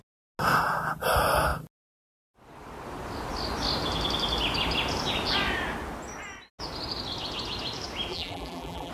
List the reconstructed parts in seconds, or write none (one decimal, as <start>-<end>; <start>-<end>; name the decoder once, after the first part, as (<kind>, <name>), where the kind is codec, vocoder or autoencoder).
8.1-8.9 (vocoder, BigVGAN v2)